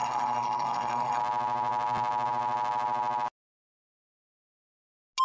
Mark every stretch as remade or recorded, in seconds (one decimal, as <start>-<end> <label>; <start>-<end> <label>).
0.0-1.2 remade; 1.2-5.2 recorded